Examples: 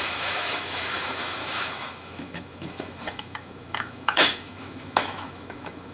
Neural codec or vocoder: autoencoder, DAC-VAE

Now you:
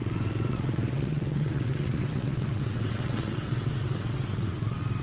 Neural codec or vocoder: vocoder, WaveNeXt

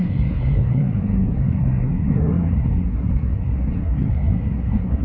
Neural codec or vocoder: codec, SNAC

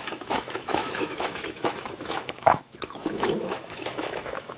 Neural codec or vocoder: autoencoder, DAC-VAE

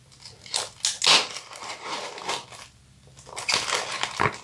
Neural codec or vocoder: none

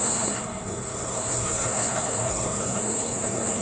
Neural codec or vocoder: codec, SNAC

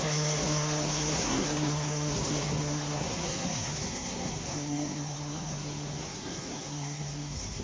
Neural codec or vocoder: codec, SNAC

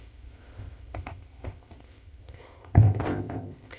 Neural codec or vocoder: codec, ZipCodec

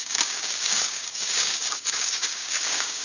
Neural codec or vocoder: codec, DAC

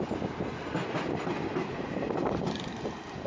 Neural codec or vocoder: none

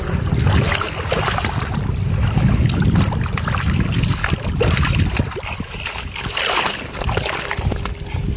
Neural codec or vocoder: none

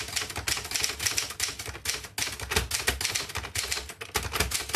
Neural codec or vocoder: none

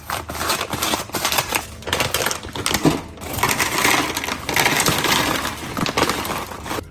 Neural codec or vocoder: none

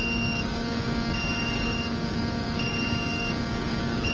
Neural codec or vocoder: codec, DAC